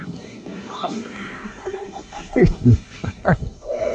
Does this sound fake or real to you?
fake